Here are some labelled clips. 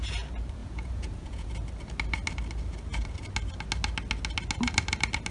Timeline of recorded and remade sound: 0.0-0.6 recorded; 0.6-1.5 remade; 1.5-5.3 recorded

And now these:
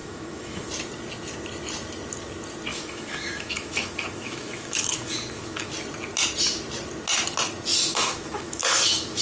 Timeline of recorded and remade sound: 0.0-0.7 remade; 0.7-2.7 recorded; 2.7-5.7 remade; 5.7-7.7 recorded; 7.7-9.2 remade

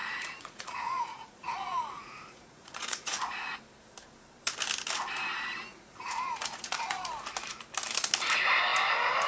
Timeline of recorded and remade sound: 0.0-3.6 remade; 3.6-5.7 recorded; 5.7-7.1 remade; 7.1-9.3 recorded

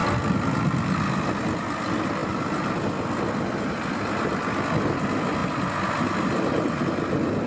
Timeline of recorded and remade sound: 0.0-7.5 recorded

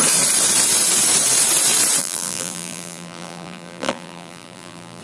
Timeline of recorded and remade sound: 0.0-2.0 recorded; 2.0-5.0 remade